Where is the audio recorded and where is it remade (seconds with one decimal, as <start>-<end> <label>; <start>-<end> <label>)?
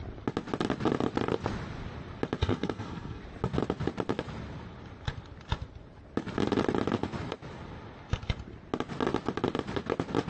0.0-2.4 recorded; 2.4-3.2 remade; 3.2-10.3 recorded